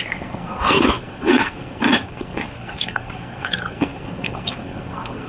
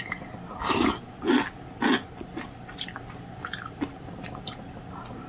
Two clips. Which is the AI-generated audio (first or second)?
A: first